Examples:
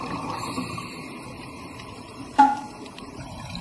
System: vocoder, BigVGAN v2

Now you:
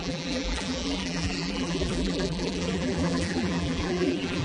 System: vocoder, BigVGAN v2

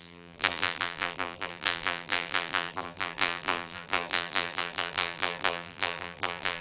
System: vocoder, BigVGAN v2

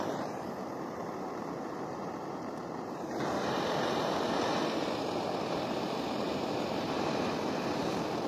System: vocoder, BigVGAN v2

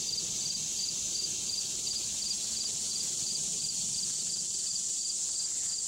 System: none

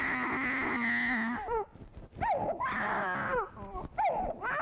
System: none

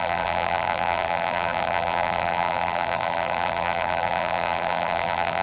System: vocoder, BigVGAN v2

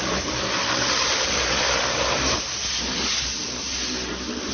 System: vocoder, BigVGAN v2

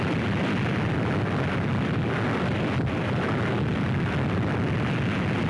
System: none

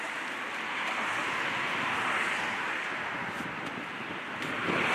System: vocoder, BigVGAN v2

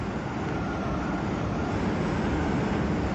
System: none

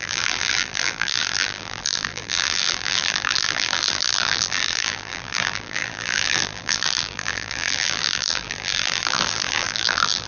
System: vocoder, BigVGAN v2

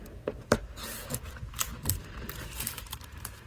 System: vocoder, BigVGAN v2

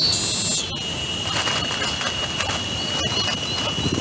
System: none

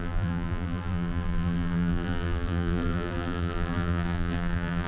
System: vocoder, BigVGAN v2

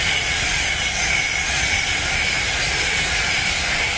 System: none